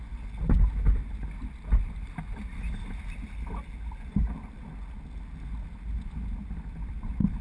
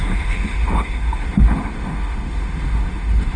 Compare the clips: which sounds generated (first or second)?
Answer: second